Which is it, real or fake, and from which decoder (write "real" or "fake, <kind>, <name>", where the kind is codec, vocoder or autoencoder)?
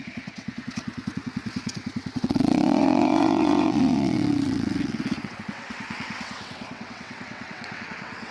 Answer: fake, vocoder, WaveNeXt